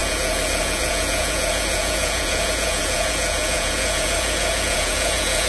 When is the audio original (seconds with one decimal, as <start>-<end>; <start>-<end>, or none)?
none